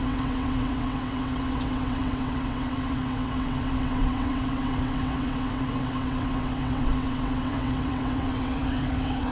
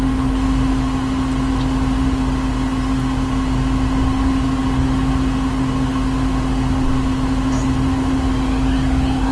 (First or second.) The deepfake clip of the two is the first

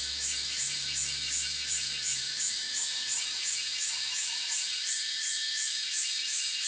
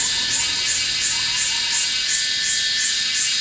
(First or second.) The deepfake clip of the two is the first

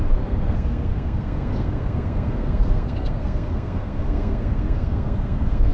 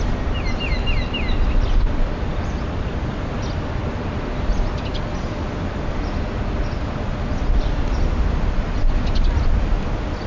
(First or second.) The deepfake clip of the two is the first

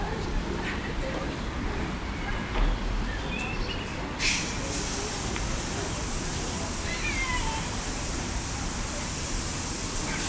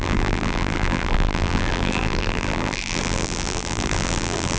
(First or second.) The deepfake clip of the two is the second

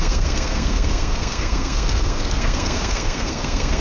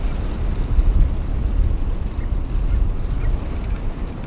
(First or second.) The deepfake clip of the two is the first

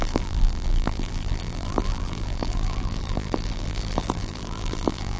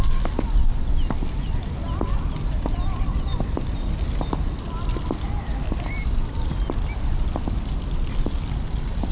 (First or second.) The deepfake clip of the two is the first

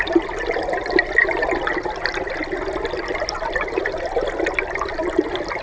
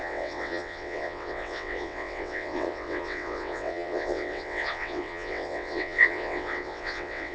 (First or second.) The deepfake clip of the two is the second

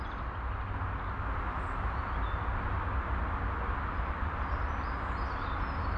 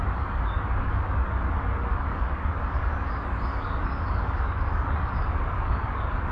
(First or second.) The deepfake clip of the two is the second